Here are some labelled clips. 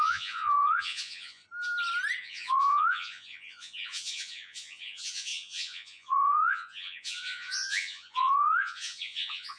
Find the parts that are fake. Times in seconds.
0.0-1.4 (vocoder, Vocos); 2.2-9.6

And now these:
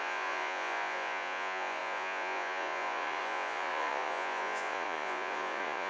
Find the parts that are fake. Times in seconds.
0.0-5.9 (vocoder, Vocos)

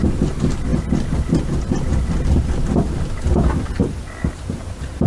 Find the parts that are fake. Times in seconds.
none

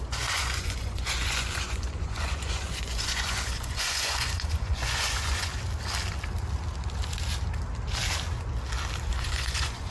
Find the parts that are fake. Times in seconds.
0.0-5.5 (vocoder, Vocos); 9.1-9.9

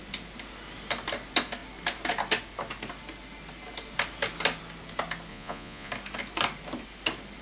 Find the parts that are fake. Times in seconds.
5.3-5.9 (vocoder, Vocos)